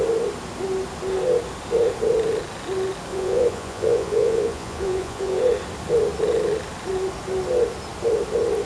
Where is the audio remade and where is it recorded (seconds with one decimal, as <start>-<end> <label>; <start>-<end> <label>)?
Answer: 0.0-3.1 recorded; 3.1-5.4 remade; 5.4-8.7 recorded

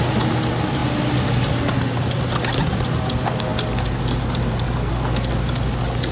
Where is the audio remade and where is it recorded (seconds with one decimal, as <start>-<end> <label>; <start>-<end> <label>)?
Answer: 0.0-4.8 recorded; 4.8-5.3 remade; 5.3-6.1 recorded

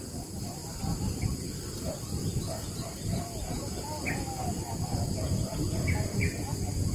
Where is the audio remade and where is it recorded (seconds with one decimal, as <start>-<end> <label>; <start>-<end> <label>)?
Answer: 0.0-6.9 recorded